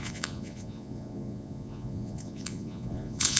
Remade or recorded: remade